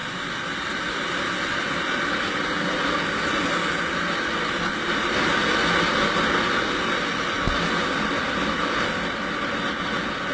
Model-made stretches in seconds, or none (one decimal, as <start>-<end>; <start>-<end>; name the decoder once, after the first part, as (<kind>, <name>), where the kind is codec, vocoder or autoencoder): none